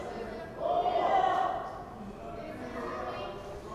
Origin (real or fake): real